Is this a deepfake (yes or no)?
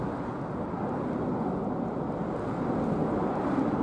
no